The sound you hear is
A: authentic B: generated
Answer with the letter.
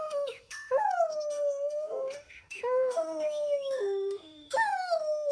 B